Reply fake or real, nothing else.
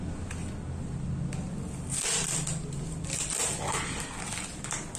real